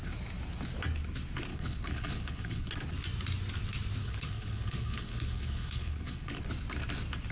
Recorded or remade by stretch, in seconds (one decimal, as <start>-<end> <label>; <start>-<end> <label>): 0.0-1.5 recorded; 1.5-2.7 remade; 2.7-4.0 recorded; 4.0-6.4 remade; 6.4-7.3 recorded